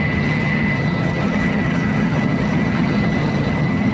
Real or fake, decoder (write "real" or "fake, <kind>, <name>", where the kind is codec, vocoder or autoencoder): fake, vocoder, HiFi-GAN